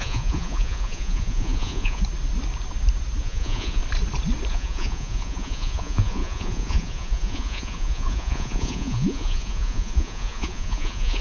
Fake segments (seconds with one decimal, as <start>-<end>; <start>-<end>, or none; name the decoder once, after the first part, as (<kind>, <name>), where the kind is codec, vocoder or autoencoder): 0.0-2.0 (vocoder, Vocos); 3.2-3.8; 4.5-11.2